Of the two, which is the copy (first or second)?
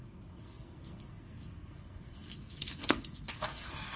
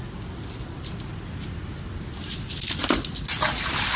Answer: first